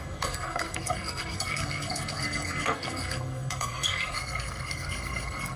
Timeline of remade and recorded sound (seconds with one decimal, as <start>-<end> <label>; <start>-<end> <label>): 0.0-5.6 remade